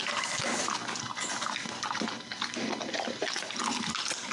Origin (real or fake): real